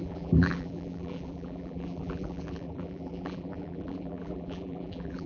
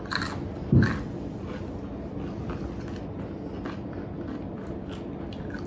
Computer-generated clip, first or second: first